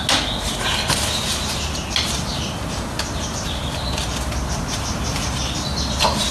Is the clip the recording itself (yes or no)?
yes